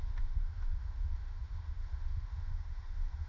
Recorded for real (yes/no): no